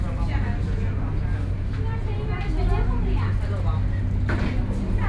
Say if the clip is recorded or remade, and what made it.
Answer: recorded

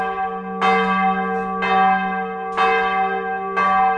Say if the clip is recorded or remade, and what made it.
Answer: recorded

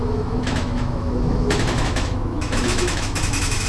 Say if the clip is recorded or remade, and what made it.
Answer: remade, autoencoder, DAC-VAE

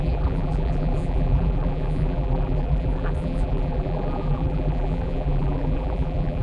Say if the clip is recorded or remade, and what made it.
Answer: remade, vocoder, BigVGAN v2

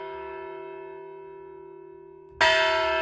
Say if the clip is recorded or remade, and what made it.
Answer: recorded